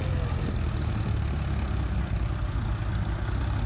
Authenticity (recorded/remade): recorded